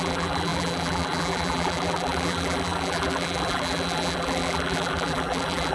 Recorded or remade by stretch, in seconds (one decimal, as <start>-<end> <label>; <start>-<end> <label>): 0.0-5.7 remade